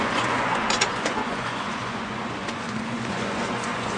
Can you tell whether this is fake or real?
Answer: fake